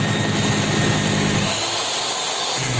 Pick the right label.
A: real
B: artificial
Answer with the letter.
A